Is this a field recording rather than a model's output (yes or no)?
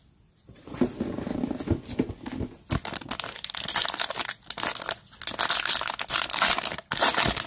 yes